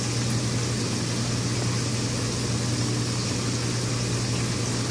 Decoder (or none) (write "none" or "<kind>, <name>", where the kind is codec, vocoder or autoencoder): none